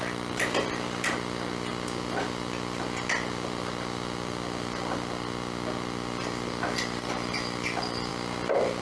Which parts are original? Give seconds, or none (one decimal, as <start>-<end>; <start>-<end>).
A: 0.0-8.8